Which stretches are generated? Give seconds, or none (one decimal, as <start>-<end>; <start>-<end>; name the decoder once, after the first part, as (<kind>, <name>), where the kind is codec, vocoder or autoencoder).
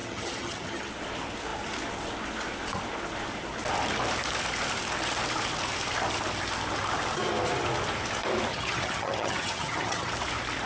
0.0-0.9 (vocoder, HiFi-GAN); 8.5-10.1